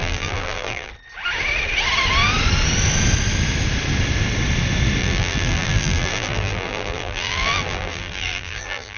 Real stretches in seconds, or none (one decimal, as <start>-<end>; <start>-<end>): 0.9-5.0